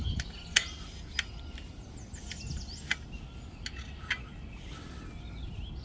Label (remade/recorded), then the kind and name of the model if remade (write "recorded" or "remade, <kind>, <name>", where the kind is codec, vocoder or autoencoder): recorded